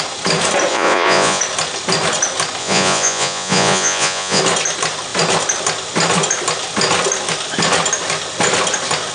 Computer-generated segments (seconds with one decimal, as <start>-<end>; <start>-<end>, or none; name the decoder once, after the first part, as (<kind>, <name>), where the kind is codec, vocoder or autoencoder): 0.7-1.4 (vocoder, Vocos); 2.6-4.4